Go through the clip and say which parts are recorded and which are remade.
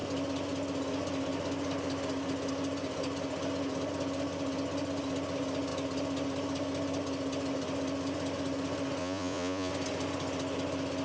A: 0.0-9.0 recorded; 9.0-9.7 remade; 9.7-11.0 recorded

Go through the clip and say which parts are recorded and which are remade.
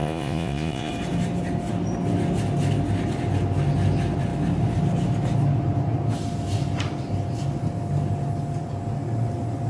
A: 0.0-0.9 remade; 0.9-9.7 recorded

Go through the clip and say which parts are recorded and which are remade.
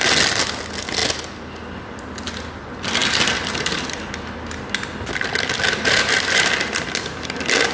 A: 0.0-7.7 recorded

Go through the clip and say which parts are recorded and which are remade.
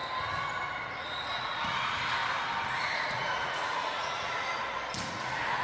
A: 0.0-0.9 recorded; 0.9-2.2 remade; 2.2-2.8 recorded; 2.8-4.5 remade; 4.5-5.1 recorded; 5.1-5.6 remade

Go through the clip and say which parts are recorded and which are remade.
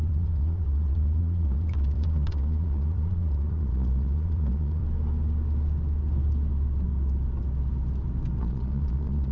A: 0.0-4.8 remade; 4.8-8.4 recorded; 8.4-9.3 remade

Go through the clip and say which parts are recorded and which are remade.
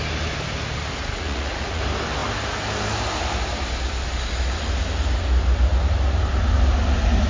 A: 0.0-1.0 recorded; 1.0-1.8 remade; 1.8-7.3 recorded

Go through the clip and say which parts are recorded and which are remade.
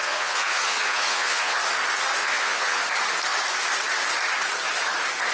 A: 0.0-1.6 remade; 1.6-2.2 recorded; 2.2-2.8 remade; 2.8-5.3 recorded